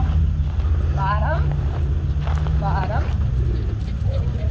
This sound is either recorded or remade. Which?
recorded